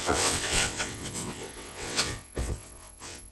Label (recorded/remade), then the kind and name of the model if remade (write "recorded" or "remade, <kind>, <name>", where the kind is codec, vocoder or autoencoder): remade, vocoder, WaveNeXt